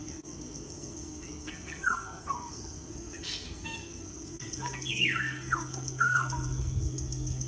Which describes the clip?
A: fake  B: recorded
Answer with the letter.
A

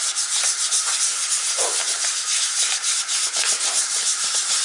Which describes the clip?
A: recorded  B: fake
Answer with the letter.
A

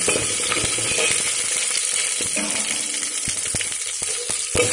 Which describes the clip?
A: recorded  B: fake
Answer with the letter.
A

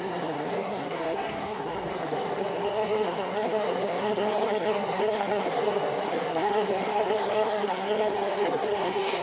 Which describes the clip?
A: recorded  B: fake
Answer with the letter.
B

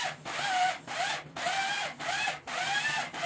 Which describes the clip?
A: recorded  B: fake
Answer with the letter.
A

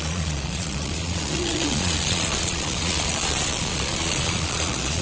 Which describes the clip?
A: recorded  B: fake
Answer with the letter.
B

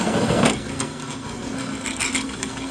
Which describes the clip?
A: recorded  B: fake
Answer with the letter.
B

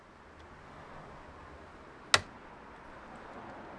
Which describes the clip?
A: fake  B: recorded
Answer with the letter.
B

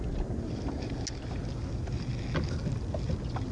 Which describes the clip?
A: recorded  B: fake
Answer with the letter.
A